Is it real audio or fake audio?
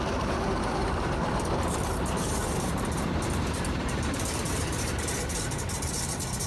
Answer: fake